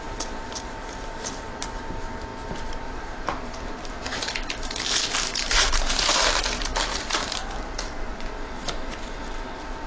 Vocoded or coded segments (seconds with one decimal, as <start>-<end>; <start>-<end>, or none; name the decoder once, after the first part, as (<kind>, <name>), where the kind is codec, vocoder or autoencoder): 0.0-9.9 (vocoder, BigVGAN v2)